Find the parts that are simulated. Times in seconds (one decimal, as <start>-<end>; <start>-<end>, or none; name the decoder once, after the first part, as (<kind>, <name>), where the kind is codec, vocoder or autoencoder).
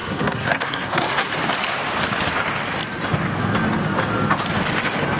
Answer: 0.0-1.3 (codec, SNAC)